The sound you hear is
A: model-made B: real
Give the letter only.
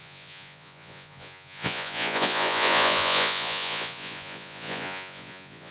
A